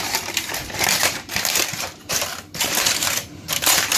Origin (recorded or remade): remade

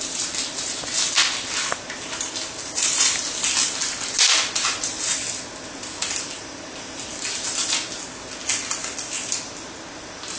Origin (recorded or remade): recorded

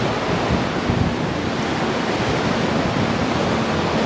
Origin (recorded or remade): recorded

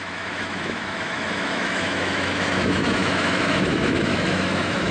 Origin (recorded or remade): remade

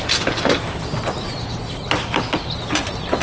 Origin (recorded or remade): recorded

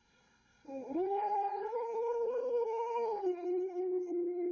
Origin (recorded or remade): remade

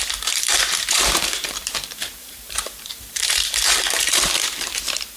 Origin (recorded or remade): remade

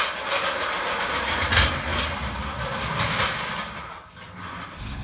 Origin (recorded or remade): recorded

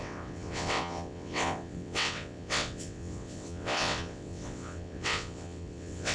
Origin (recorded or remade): remade